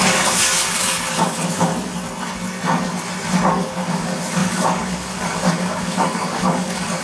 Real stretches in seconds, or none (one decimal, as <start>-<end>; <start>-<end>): 1.7-3.5